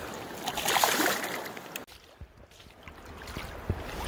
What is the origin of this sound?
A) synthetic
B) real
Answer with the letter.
B